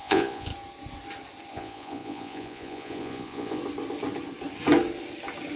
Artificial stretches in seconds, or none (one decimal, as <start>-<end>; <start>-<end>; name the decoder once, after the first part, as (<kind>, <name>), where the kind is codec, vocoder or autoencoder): 0.0-0.5 (vocoder, Vocos); 1.5-3.6